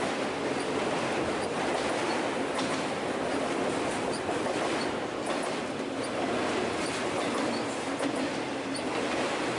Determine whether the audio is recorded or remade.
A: recorded